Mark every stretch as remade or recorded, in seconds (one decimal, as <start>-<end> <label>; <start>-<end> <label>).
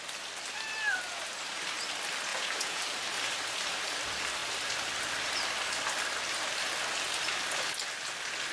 0.0-2.3 recorded; 2.3-2.8 remade; 2.8-8.5 recorded